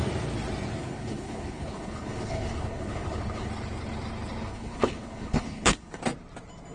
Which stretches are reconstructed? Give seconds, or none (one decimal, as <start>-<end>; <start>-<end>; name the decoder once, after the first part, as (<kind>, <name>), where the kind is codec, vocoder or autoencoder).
0.8-3.5 (codec, HILCodec); 4.5-6.0